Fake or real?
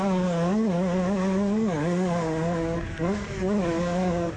fake